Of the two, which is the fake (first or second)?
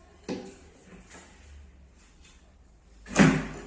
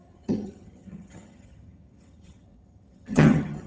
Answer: second